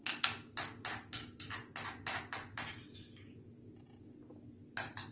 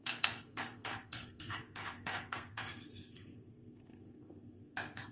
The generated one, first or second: second